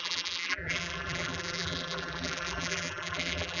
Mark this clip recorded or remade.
remade